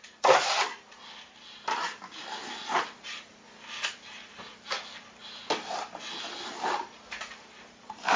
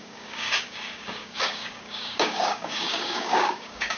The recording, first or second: first